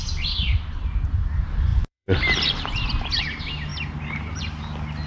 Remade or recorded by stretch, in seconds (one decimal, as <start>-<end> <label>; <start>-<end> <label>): 0.0-1.7 recorded; 1.7-3.3 remade; 3.3-5.1 recorded